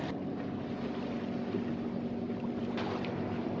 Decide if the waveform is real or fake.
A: real